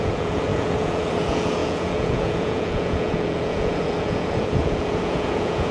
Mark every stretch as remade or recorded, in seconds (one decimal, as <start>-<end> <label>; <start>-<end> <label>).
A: 0.0-5.7 remade